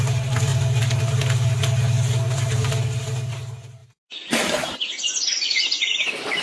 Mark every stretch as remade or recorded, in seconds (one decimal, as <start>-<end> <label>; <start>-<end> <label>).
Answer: 0.0-6.4 recorded